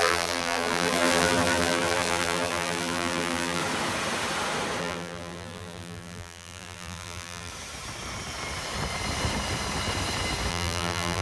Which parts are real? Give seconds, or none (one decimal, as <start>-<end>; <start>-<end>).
3.6-4.8; 7.5-10.5